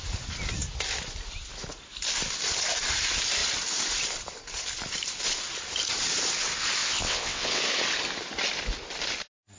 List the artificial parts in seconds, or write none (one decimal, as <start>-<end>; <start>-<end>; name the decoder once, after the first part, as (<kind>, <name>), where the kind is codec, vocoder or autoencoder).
6.8-7.6 (vocoder, WaveNeXt)